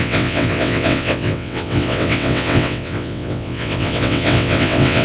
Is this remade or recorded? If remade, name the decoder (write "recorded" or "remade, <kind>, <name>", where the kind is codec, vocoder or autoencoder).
remade, vocoder, WaveNeXt